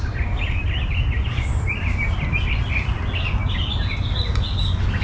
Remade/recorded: recorded